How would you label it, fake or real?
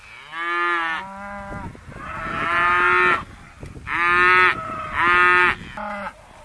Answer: real